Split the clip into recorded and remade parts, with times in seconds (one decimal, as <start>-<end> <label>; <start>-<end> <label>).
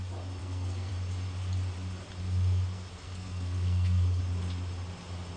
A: 0.0-0.4 recorded; 0.4-0.9 remade; 0.9-2.2 recorded; 2.2-4.2 remade; 4.2-5.4 recorded